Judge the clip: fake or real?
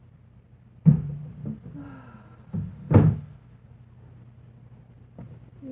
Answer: real